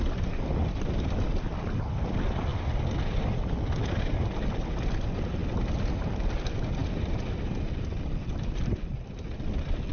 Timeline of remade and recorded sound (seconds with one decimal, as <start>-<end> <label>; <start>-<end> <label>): 0.0-9.9 recorded